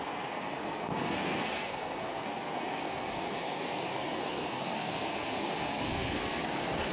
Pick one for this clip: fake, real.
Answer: fake